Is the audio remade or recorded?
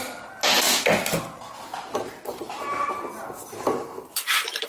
recorded